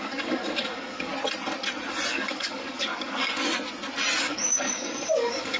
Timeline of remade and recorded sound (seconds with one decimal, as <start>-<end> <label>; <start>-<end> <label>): 0.0-1.1 remade; 1.1-2.1 recorded; 2.1-3.3 remade; 3.3-4.2 recorded; 4.2-5.6 remade